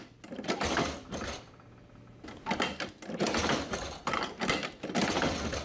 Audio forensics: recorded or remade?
recorded